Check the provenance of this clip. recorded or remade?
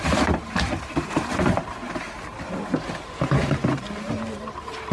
remade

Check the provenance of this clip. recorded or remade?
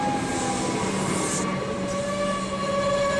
recorded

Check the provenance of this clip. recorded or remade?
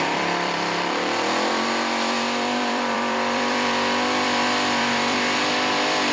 remade